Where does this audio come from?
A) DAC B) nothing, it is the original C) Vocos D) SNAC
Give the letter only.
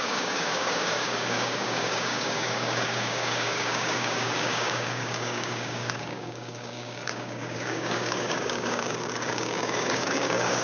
A